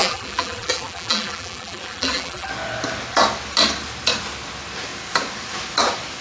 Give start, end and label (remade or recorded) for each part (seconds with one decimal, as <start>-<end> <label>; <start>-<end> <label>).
0.0-2.5 remade; 2.5-6.2 recorded